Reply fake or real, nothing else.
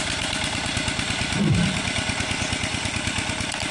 real